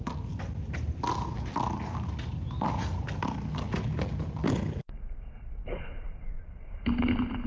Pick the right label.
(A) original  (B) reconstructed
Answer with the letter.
A